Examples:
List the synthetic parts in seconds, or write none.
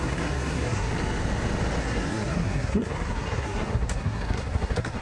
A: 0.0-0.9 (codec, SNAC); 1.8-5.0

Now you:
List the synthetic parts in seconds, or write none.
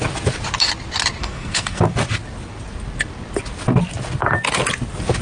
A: 1.2-1.8 (codec, SNAC)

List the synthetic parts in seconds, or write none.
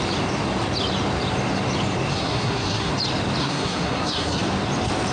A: 2.1-2.9 (codec, SNAC); 3.4-4.4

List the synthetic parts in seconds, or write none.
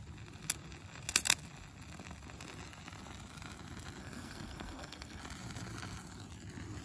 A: 4.0-5.2 (codec, SNAC)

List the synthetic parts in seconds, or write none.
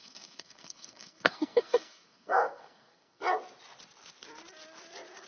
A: 0.0-3.2 (codec, SNAC)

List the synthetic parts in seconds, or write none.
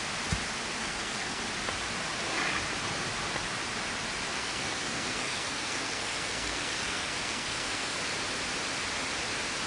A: 0.8-1.4 (codec, SNAC); 4.3-8.0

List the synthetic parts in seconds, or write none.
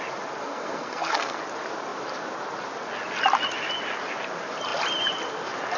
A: 0.4-1.4 (codec, SNAC)